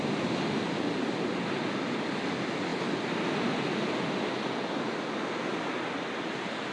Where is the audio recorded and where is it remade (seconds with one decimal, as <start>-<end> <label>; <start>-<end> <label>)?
0.0-6.7 recorded